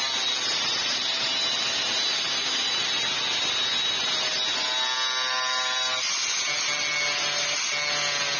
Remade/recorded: recorded